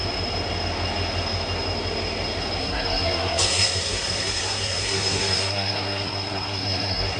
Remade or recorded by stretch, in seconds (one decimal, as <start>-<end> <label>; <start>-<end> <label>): 0.0-2.6 recorded; 2.6-7.2 remade